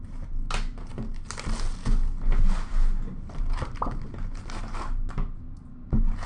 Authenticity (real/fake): real